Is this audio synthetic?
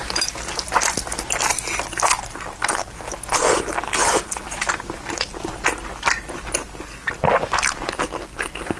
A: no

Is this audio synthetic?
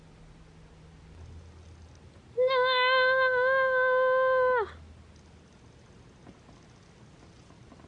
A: no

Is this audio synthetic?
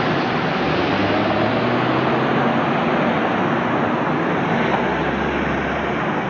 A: no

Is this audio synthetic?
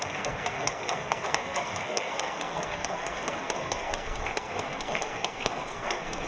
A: yes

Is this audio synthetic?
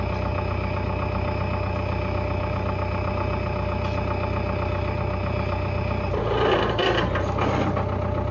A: no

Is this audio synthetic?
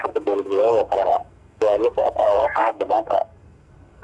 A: yes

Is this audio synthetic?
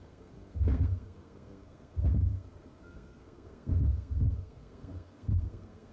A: yes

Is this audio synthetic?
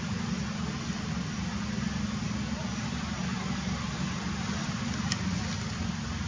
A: no